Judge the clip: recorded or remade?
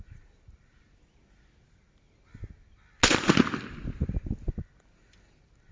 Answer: recorded